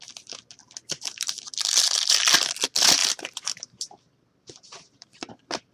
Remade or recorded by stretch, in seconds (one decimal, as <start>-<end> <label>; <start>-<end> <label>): 0.0-3.0 recorded; 3.0-5.3 remade; 5.3-5.7 recorded